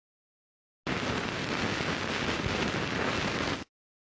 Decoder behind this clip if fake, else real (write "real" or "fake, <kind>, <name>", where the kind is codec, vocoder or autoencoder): real